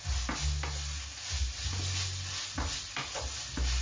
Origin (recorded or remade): recorded